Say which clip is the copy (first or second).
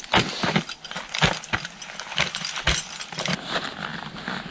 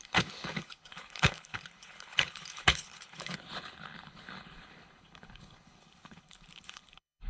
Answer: second